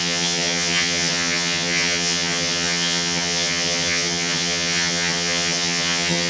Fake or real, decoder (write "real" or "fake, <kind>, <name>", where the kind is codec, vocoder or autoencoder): fake, vocoder, HiFi-GAN